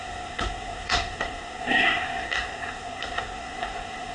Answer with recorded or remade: remade